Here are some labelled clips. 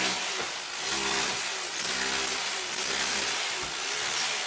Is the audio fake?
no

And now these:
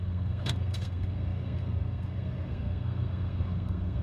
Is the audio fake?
yes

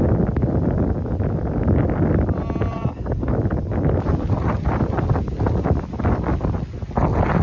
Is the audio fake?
no